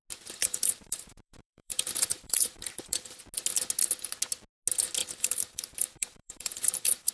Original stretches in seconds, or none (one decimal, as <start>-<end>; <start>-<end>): 0.0-0.4; 3.2-5.0